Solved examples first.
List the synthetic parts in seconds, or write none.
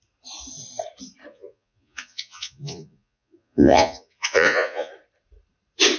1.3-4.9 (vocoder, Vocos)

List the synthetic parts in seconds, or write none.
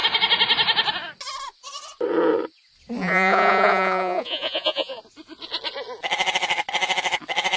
3.0-5.0 (vocoder, Vocos)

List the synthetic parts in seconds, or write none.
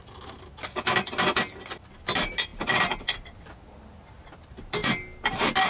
none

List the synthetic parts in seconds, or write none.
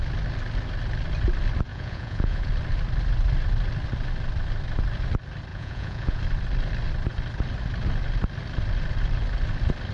1.7-2.5 (vocoder, Vocos); 5.5-6.2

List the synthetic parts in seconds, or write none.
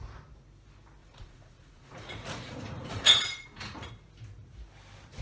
1.0-3.9 (vocoder, Vocos)